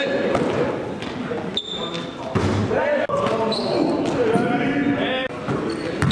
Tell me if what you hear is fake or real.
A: real